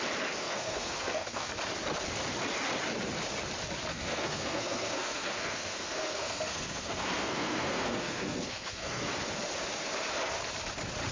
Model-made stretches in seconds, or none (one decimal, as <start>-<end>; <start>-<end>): 0.4-1.5; 3.9-9.1